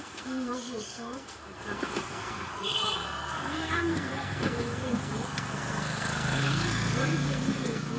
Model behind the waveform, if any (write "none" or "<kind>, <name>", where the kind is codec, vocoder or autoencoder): codec, SNAC